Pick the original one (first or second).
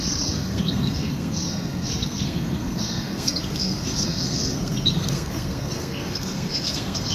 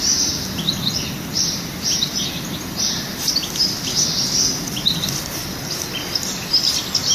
second